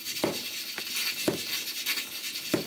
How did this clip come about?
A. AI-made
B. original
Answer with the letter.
B